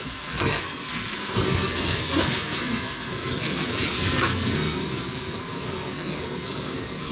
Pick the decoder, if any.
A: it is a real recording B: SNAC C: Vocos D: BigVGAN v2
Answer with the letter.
B